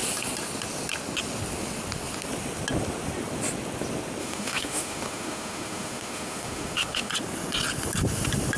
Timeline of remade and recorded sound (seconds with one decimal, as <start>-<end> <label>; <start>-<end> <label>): 0.0-4.2 recorded; 4.2-7.1 remade; 7.1-8.6 recorded